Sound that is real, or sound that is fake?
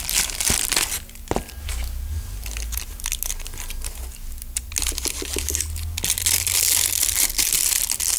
real